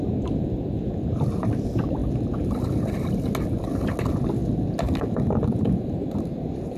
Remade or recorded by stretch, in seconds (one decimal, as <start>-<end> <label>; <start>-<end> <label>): 0.0-6.8 recorded